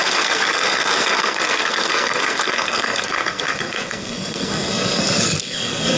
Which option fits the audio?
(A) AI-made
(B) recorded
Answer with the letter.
A